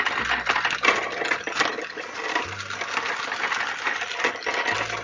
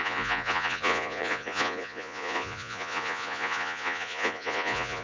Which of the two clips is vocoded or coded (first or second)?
second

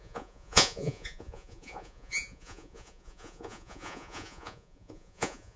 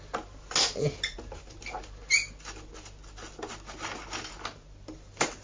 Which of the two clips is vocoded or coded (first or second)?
first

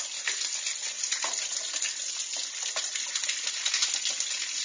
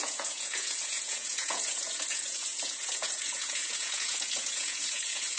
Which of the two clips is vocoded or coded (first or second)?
second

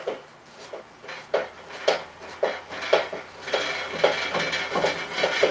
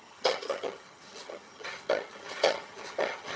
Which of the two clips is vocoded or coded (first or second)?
second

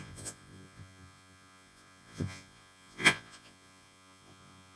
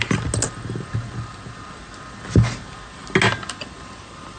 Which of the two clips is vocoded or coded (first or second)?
first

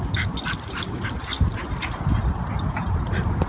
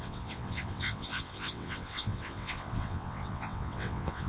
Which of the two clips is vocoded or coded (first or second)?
second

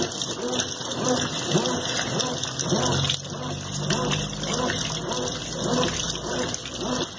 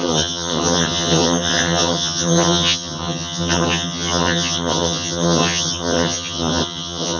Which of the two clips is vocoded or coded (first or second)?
second